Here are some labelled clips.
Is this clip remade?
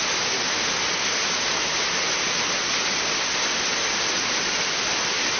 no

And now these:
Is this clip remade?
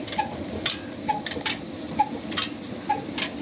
no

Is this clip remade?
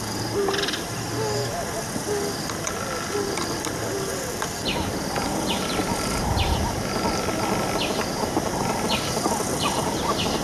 no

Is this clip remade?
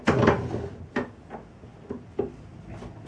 no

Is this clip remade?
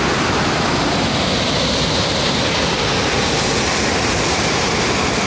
no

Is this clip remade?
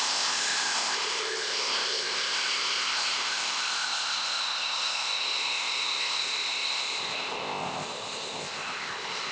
yes